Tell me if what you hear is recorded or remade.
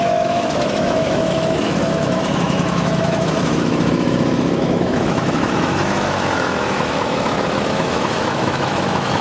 remade